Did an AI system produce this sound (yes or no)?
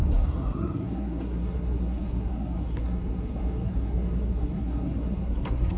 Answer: yes